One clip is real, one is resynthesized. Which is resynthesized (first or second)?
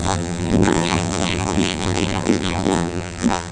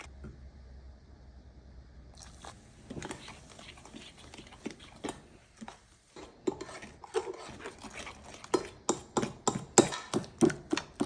first